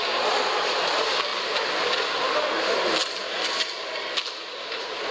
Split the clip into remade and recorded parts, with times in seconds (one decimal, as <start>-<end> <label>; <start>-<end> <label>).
0.0-5.1 recorded